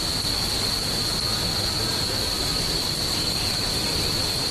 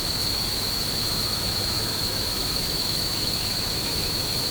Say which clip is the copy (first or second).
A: second